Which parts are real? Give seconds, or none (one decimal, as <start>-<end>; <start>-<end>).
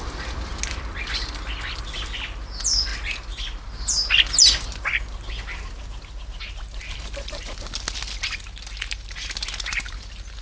0.0-10.4